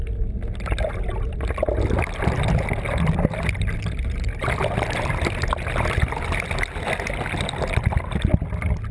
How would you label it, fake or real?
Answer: real